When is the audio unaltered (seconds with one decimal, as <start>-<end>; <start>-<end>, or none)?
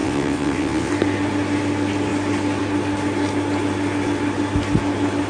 0.9-5.3